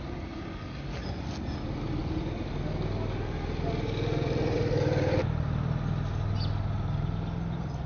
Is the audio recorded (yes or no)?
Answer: yes